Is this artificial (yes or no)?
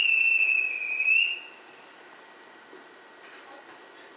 no